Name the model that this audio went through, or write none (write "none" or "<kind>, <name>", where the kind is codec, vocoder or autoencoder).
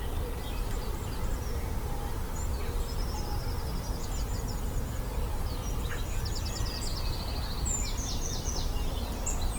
none